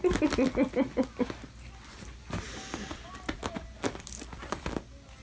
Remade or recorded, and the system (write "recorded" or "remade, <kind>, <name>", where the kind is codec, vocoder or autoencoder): recorded